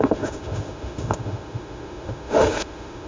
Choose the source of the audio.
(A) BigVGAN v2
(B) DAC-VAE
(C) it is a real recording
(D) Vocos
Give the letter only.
B